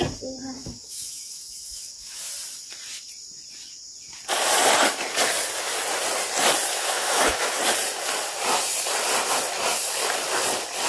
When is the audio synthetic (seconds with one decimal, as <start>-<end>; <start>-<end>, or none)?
0.6-2.3; 6.7-7.6